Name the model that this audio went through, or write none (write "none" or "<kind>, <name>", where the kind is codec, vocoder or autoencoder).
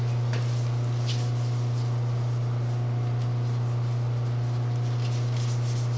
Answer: none